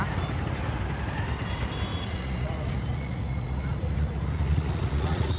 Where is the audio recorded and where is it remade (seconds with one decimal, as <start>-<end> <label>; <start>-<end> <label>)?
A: 0.0-1.9 recorded; 1.9-5.4 remade